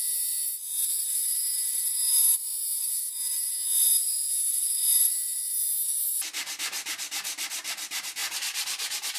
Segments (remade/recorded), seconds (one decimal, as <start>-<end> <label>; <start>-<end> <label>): 0.0-2.5 recorded; 2.5-3.5 remade; 3.5-4.9 recorded; 4.9-5.6 remade; 5.6-8.2 recorded; 8.2-9.2 remade